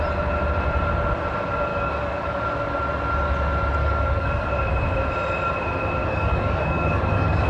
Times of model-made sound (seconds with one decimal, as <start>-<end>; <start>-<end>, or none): 1.7-2.4; 3.8-4.5; 6.0-7.5